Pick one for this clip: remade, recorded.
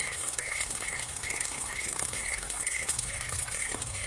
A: remade